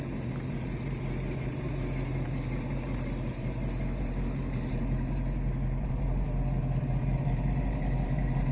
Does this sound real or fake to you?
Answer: fake